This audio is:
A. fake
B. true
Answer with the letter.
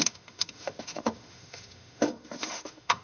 A